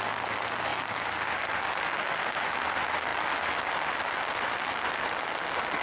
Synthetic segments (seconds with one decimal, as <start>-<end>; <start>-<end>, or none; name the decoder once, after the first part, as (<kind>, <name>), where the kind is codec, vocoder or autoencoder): none